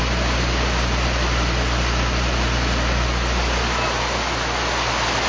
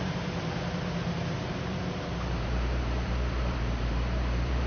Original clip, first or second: first